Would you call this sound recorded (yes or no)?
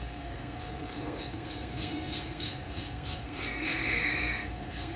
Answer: no